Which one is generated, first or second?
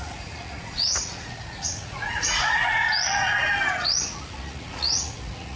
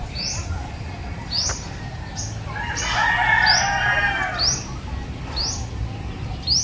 first